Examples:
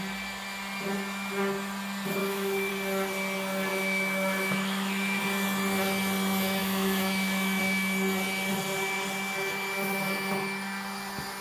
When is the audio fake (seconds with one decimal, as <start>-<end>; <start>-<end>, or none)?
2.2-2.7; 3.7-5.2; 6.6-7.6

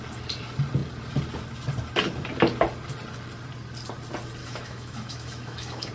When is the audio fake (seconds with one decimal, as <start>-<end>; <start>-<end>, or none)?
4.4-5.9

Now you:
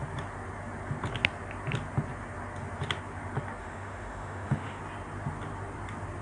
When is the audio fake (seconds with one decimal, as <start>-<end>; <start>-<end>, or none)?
3.6-4.8